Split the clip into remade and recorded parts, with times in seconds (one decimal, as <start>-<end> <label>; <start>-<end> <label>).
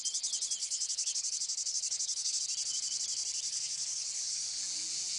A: 0.0-0.6 recorded; 0.6-2.4 remade; 2.4-3.5 recorded; 3.5-4.6 remade; 4.6-5.2 recorded